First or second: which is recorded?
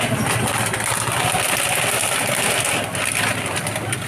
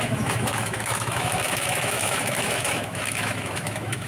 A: first